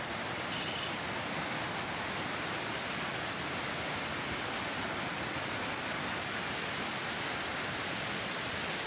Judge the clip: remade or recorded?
recorded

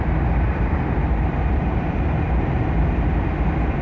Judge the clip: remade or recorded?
remade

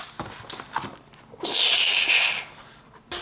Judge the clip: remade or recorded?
recorded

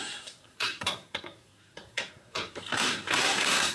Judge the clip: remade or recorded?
remade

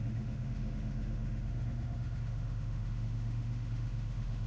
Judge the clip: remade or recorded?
remade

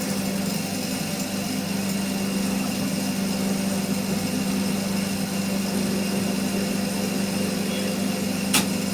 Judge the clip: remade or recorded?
recorded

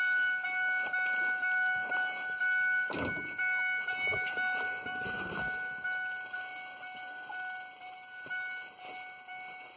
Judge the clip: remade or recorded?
recorded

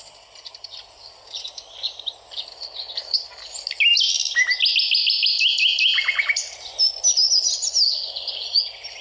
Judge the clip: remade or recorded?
recorded